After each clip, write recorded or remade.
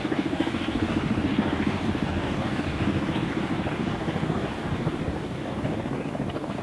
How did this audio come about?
remade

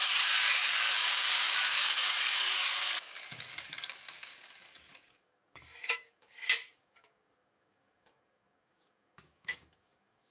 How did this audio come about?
remade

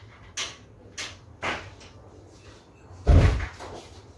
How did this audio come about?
recorded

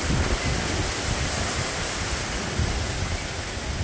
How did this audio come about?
recorded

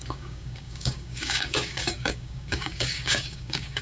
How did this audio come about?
remade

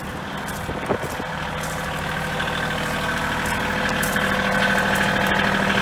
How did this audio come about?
recorded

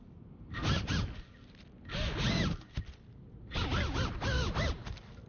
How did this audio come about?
recorded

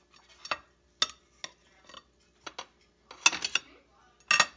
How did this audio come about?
recorded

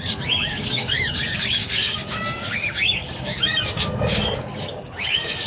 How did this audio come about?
remade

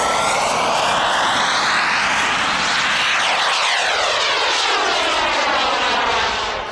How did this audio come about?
recorded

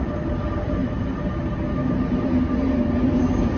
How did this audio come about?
recorded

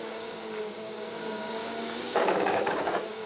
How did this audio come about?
remade